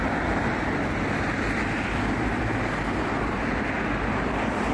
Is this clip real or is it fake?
fake